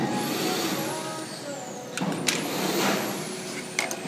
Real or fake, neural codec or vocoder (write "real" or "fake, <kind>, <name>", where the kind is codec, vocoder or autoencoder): real